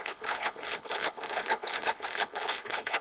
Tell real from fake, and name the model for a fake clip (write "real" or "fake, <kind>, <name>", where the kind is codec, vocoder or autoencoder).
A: fake, codec, HILCodec